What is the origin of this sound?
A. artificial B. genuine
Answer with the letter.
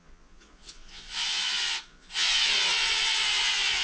A